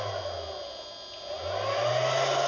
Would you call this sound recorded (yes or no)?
yes